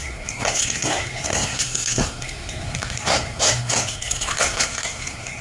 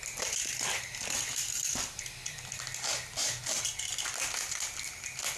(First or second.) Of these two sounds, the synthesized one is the first